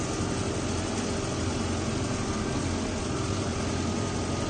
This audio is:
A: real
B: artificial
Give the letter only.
A